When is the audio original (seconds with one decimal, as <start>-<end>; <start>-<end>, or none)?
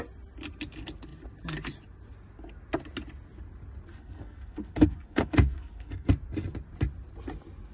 0.0-3.9; 6.1-7.7